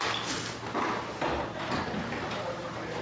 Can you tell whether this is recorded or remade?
recorded